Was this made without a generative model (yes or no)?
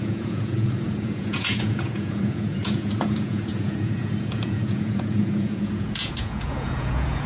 no